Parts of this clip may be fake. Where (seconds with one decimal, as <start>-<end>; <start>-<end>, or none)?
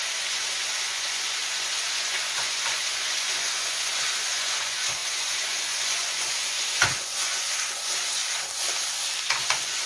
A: 0.0-8.2; 9.2-9.9